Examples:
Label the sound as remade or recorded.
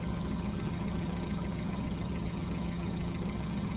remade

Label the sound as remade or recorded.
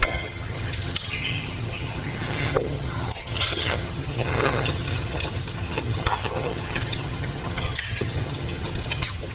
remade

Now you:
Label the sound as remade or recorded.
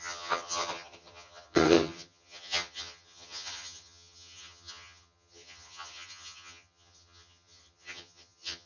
remade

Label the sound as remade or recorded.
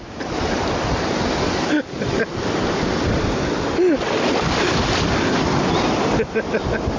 recorded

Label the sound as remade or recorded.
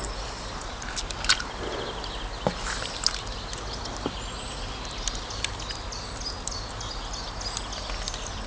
recorded